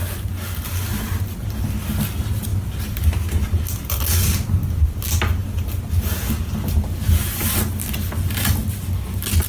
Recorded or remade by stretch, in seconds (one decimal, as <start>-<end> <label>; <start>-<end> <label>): 0.0-9.5 recorded